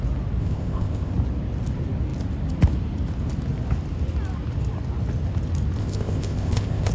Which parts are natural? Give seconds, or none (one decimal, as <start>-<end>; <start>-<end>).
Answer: 0.0-0.4; 1.1-5.8